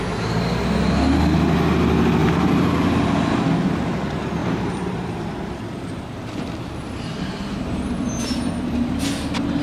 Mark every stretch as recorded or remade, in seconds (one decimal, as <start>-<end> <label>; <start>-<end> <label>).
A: 0.0-2.2 recorded; 2.2-2.9 remade; 2.9-4.4 recorded; 4.4-8.2 remade; 8.2-9.6 recorded